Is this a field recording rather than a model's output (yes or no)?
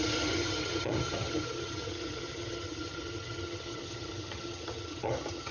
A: no